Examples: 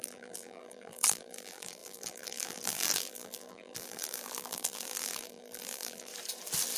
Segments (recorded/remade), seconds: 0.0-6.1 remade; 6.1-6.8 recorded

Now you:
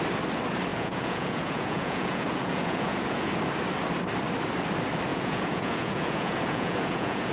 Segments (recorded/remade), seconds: 0.0-0.7 recorded; 0.7-3.3 remade; 3.3-5.1 recorded; 5.1-7.3 remade

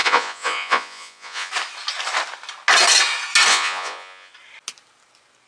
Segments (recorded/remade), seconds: 0.0-1.5 remade; 1.5-3.5 recorded; 3.5-4.3 remade; 4.3-5.5 recorded

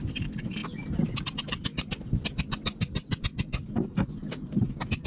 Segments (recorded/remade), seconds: 0.0-5.1 recorded

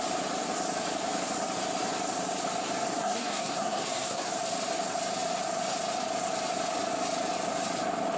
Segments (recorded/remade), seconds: 0.0-3.0 recorded; 3.0-4.3 remade; 4.3-8.2 recorded